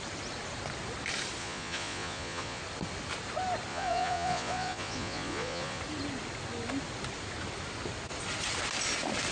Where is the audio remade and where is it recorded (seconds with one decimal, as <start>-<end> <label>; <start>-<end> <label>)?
0.0-1.4 recorded; 1.4-2.6 remade; 2.6-3.7 recorded; 3.7-5.8 remade; 5.8-9.3 recorded